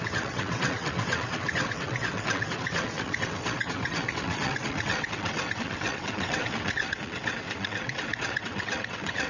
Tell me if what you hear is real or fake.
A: fake